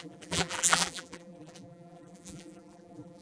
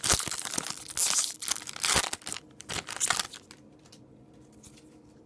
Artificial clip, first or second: first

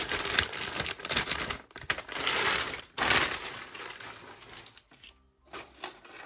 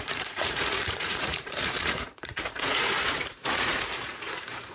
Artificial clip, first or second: second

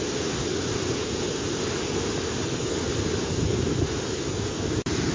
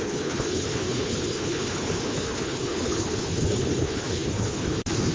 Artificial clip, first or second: second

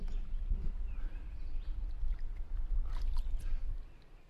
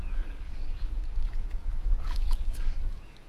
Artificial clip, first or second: second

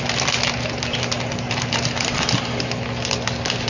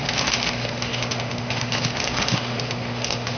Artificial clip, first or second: second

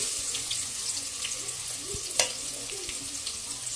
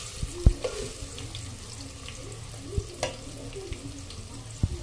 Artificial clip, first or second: first